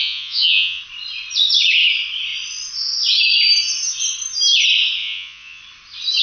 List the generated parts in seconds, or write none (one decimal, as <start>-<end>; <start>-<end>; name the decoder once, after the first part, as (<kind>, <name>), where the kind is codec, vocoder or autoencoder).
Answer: 0.0-0.8 (vocoder, Vocos); 5.0-5.6